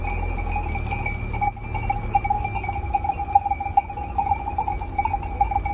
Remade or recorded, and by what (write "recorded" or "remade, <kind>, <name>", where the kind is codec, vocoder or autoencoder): recorded